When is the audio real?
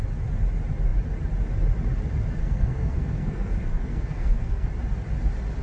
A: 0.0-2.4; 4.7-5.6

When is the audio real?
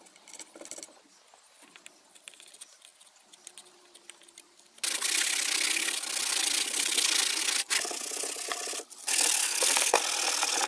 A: 0.0-9.4; 10.0-10.7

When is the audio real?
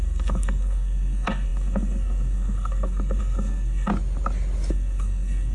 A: 3.9-4.7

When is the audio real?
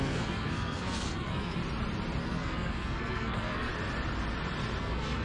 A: 1.6-2.2; 3.7-4.8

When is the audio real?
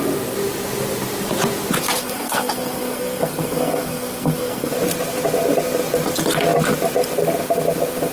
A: 0.0-2.0; 4.7-8.1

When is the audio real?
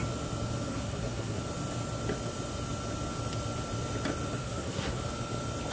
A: 0.0-0.7; 1.4-4.4; 5.0-5.7